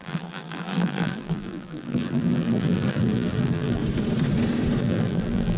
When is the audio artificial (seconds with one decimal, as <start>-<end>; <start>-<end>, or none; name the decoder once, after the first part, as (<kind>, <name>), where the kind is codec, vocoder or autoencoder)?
0.0-3.8 (vocoder, BigVGAN v2); 4.8-5.6